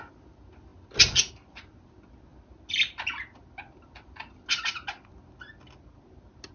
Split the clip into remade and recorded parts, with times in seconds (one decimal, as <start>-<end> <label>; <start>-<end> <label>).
0.0-6.5 recorded